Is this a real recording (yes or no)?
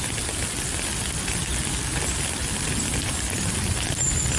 yes